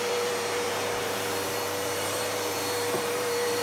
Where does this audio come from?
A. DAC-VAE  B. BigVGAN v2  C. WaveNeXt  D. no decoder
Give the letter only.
B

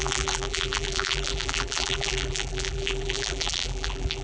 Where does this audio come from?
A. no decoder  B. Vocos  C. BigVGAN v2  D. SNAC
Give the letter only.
C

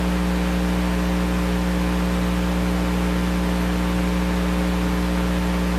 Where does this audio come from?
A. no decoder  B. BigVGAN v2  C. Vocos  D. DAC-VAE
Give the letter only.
A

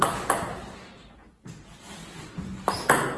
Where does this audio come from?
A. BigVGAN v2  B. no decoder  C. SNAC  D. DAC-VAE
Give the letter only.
B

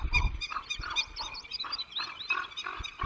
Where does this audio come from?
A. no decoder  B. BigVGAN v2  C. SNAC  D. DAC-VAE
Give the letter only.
A